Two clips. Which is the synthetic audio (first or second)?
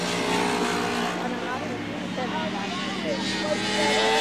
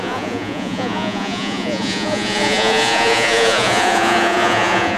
second